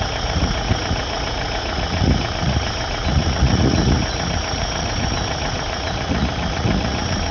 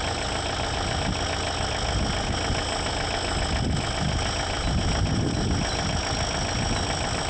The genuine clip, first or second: second